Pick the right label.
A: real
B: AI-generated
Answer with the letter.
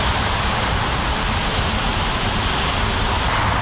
A